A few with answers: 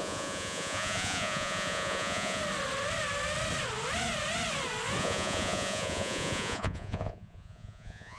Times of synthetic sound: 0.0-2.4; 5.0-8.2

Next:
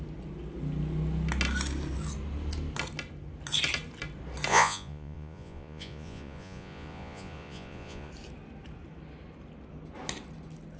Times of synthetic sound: 4.5-8.1

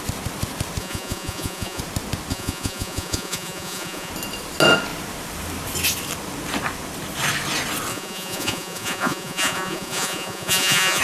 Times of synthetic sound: 0.8-1.8; 2.3-4.1; 7.9-11.0